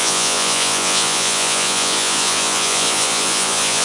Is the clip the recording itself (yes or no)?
no